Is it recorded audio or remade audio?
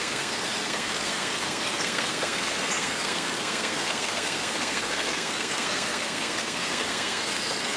remade